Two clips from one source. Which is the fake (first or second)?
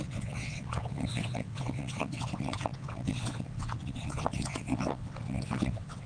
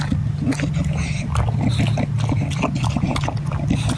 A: first